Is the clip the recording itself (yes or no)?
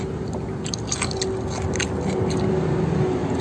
no